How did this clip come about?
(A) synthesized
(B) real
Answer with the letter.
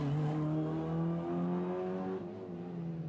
B